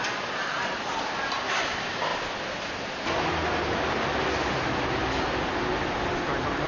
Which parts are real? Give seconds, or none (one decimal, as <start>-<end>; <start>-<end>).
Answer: 0.0-6.7